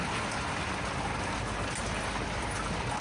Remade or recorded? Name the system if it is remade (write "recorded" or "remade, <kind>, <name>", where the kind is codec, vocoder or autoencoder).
recorded